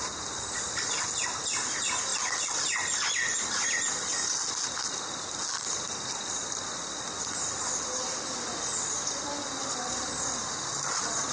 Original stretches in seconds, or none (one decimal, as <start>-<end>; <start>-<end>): 0.0-11.3